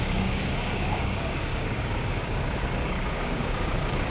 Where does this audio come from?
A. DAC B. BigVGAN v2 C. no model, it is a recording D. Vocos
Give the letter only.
A